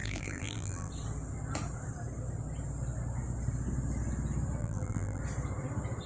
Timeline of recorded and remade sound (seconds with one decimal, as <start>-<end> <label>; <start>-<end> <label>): 0.0-0.9 remade; 0.9-4.6 recorded; 4.6-5.2 remade; 5.2-6.1 recorded